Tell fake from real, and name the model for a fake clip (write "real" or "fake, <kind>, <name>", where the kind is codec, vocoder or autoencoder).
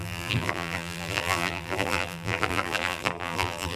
fake, vocoder, BigVGAN v2